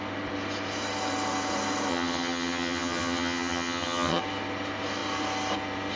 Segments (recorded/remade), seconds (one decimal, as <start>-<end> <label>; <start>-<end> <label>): 0.0-1.9 recorded; 1.9-4.2 remade; 4.2-6.0 recorded